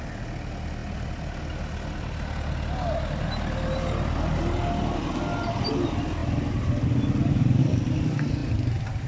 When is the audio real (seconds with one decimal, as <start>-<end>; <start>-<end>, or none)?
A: 0.0-9.1